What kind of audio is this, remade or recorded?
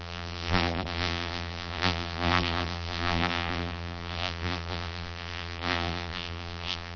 remade